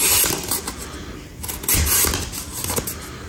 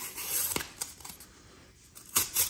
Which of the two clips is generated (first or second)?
second